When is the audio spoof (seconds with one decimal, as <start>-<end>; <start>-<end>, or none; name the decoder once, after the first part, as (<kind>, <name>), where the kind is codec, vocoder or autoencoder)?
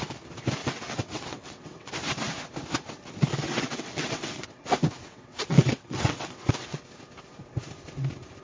0.6-1.9 (vocoder, WaveNeXt); 3.3-4.6; 5.1-6.8